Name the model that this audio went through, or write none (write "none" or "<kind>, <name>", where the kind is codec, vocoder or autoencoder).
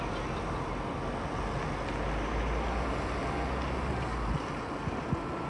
none